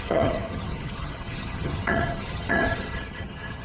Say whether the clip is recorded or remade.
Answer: remade